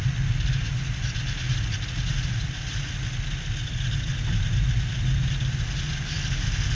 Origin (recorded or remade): recorded